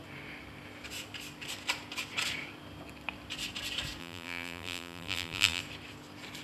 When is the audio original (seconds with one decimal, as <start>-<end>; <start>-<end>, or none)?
0.0-4.0; 5.6-6.4